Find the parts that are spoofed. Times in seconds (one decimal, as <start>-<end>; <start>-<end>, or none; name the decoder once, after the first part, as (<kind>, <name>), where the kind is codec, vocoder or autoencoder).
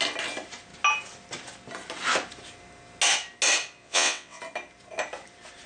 3.8-4.4 (vocoder, WaveNeXt)